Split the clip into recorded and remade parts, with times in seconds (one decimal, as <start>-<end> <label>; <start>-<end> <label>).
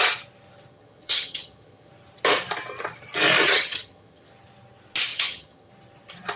0.0-0.7 recorded; 0.7-1.9 remade; 1.9-3.4 recorded; 3.4-4.3 remade; 4.3-5.1 recorded; 5.1-5.7 remade; 5.7-6.4 recorded